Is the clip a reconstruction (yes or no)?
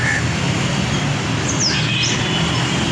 no